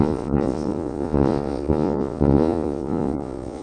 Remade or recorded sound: remade